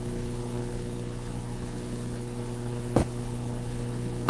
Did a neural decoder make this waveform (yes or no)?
yes